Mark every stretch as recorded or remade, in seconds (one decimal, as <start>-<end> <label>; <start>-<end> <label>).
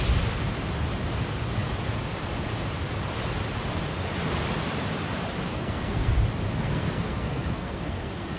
0.0-5.5 recorded; 5.5-6.1 remade; 6.1-6.6 recorded; 6.6-8.4 remade